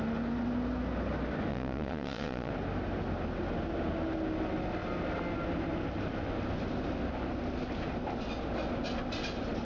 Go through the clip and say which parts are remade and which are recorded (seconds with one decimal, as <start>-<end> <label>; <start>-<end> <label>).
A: 0.0-1.5 recorded; 1.5-2.5 remade; 2.5-9.6 recorded